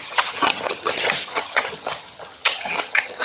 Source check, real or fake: fake